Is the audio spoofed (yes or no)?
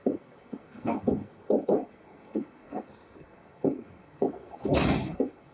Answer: yes